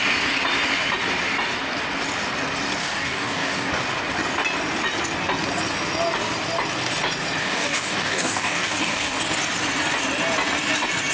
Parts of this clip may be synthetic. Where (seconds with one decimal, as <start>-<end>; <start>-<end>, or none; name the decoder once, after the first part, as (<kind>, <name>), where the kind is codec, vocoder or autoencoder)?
2.8-3.7 (codec, DAC); 7.4-9.2